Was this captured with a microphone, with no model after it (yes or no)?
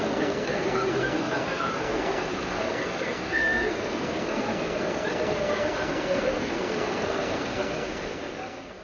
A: no